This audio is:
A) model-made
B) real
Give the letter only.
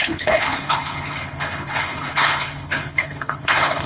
A